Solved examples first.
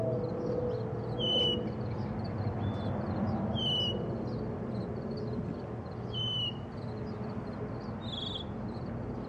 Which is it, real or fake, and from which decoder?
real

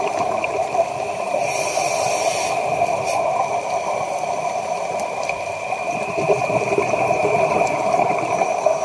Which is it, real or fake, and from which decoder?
real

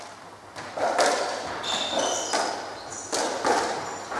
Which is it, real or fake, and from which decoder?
real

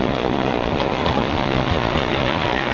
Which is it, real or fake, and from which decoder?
fake, vocoder, Vocos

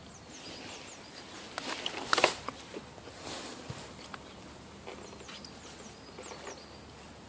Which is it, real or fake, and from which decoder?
real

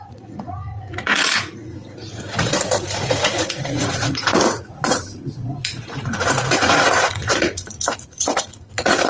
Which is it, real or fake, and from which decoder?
fake, vocoder, Vocos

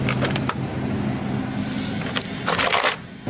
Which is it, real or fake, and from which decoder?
real